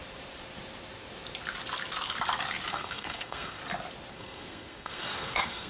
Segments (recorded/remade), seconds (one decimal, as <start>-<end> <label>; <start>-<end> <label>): 0.0-2.7 recorded; 2.7-3.6 remade; 3.6-4.1 recorded; 4.1-5.7 remade